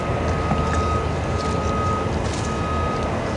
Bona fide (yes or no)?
yes